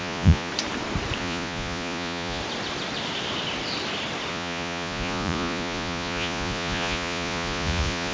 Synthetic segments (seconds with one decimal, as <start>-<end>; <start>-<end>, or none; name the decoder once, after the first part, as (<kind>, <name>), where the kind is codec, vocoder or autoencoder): 0.0-0.5 (vocoder, Vocos); 1.2-2.4; 4.3-8.1